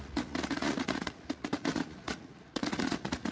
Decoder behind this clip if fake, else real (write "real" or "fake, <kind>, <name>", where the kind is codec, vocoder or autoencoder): fake, vocoder, Vocos